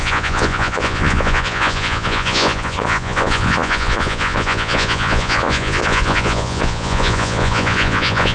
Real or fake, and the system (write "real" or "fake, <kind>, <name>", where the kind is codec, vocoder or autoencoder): fake, vocoder, Vocos